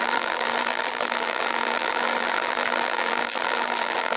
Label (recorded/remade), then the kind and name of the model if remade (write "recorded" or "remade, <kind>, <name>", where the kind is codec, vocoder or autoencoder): remade, vocoder, BigVGAN v2